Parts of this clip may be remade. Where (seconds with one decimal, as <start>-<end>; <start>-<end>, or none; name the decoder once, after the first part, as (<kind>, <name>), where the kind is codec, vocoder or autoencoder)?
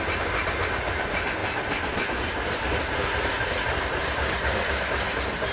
none